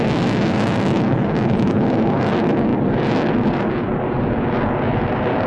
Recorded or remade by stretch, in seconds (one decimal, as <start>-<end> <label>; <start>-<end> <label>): 0.0-5.5 recorded

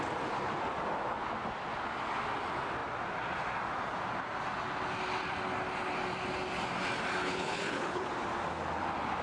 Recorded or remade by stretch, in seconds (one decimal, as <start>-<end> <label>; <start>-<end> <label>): 0.0-7.2 recorded; 7.2-8.1 remade; 8.1-9.2 recorded